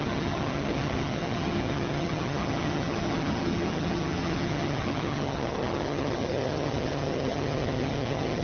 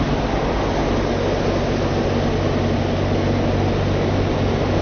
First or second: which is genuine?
second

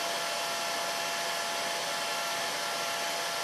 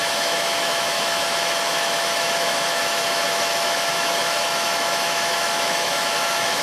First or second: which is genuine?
first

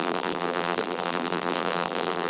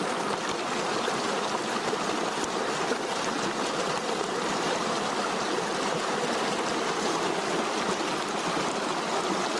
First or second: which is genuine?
second